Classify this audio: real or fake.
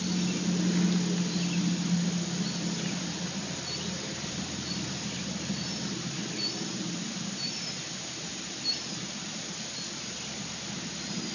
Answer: real